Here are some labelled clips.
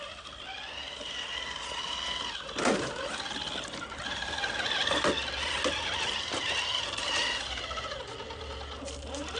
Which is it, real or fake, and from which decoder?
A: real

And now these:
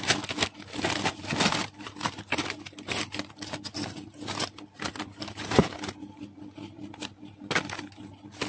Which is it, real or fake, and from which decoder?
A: real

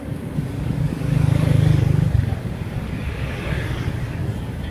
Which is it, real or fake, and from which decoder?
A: fake, codec, DAC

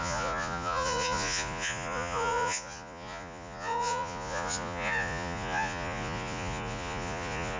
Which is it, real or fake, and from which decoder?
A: fake, vocoder, Vocos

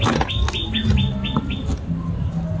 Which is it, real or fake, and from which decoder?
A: real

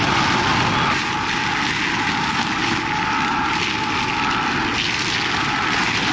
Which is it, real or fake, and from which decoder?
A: real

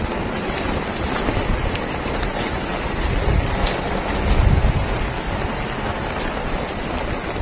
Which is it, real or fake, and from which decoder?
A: real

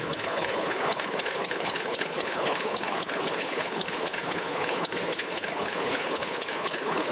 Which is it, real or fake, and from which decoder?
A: fake, codec, HILCodec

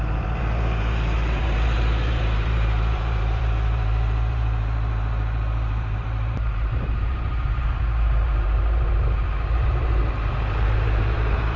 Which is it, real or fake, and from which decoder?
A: fake, vocoder, BigVGAN v2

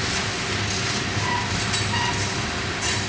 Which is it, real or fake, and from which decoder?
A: real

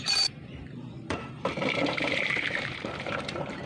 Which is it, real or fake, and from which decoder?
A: fake, vocoder, BigVGAN v2